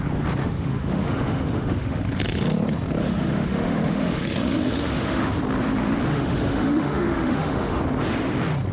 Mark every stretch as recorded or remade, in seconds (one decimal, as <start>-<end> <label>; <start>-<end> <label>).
0.0-0.4 recorded; 0.4-2.0 remade; 2.0-3.0 recorded; 3.0-5.3 remade; 5.3-6.1 recorded; 6.1-7.8 remade; 7.8-8.7 recorded